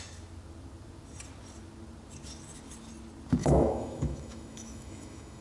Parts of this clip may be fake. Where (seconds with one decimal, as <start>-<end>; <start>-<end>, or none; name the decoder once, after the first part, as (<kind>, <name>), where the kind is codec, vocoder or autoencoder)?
3.4-5.4 (autoencoder, DAC-VAE)